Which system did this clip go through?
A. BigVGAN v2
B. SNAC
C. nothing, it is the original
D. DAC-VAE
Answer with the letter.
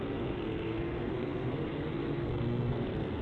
B